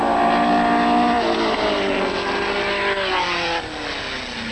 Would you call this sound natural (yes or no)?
yes